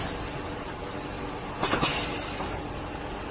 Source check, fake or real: real